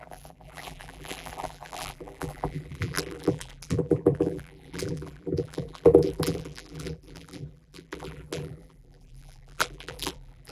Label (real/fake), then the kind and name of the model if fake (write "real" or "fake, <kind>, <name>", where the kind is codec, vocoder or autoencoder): fake, vocoder, BigVGAN v2